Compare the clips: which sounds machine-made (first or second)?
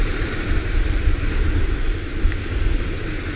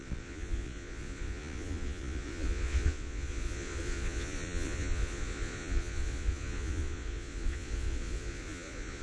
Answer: second